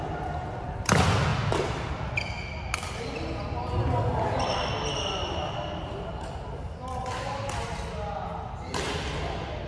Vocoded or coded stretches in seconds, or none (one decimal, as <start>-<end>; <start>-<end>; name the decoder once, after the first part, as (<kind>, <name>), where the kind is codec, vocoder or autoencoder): none